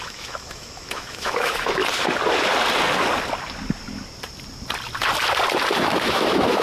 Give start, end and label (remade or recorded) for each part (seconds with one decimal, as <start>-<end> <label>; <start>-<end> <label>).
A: 0.0-1.8 remade; 1.8-5.8 recorded; 5.8-6.6 remade